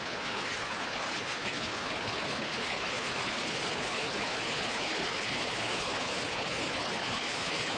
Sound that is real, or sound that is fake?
fake